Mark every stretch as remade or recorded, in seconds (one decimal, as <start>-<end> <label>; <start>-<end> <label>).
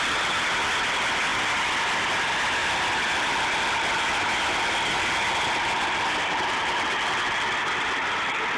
0.0-8.6 recorded